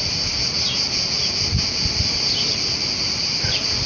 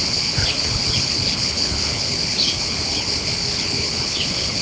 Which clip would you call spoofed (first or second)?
second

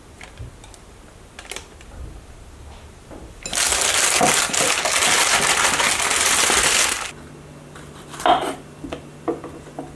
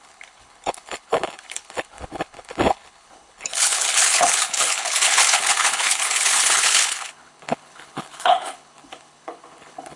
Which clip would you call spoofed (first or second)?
second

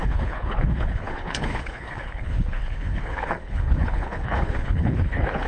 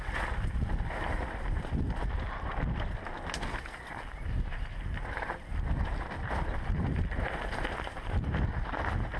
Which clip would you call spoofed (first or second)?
first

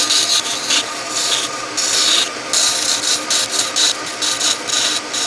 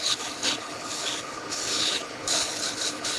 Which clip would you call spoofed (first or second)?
second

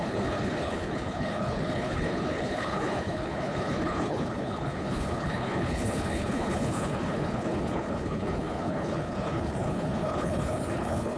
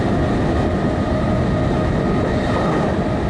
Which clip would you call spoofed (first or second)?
first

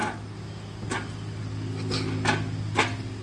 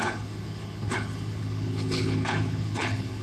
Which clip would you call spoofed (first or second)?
second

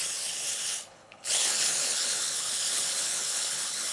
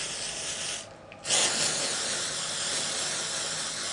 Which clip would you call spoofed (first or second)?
first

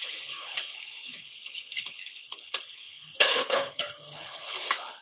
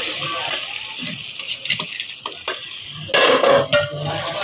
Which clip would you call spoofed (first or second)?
first